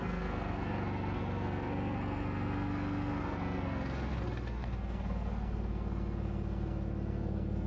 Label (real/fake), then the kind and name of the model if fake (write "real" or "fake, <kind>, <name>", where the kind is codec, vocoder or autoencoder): fake, codec, SNAC